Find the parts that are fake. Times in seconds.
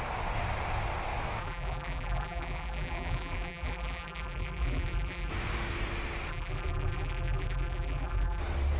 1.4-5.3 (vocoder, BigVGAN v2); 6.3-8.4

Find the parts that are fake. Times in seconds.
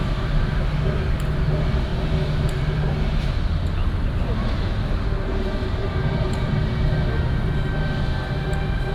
0.0-0.5 (vocoder, BigVGAN v2); 5.8-6.8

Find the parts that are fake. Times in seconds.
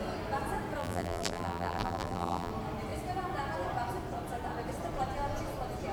0.8-2.5 (vocoder, BigVGAN v2)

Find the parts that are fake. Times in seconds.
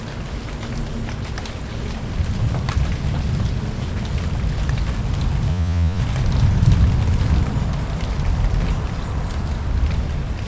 5.5-6.0 (vocoder, Vocos)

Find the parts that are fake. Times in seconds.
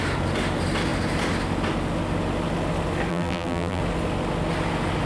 3.1-3.8 (vocoder, BigVGAN v2)